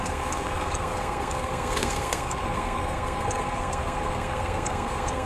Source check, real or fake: fake